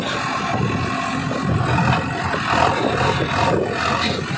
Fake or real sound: real